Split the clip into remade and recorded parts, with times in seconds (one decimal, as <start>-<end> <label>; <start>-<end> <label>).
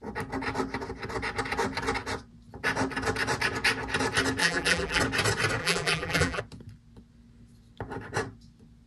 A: 0.0-4.4 recorded; 4.4-5.0 remade; 5.0-5.6 recorded; 5.6-6.4 remade; 6.4-8.9 recorded